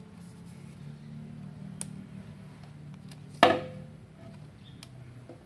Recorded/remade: recorded